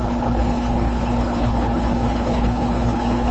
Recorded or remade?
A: remade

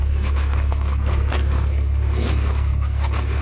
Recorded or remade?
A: remade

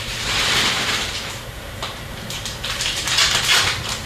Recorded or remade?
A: remade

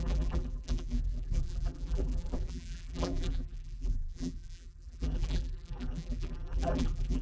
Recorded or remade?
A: remade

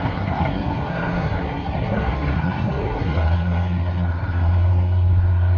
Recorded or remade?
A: remade